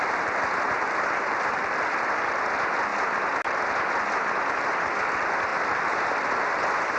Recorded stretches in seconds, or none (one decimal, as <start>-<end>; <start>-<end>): 0.0-7.0